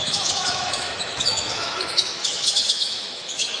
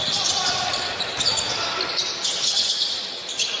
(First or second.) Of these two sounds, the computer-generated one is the first